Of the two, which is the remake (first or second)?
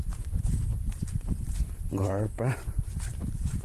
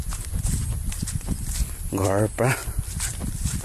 first